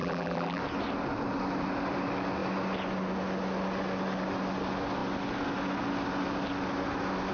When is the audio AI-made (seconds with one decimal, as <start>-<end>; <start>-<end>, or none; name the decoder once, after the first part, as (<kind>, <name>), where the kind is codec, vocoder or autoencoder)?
0.0-0.6 (vocoder, BigVGAN v2)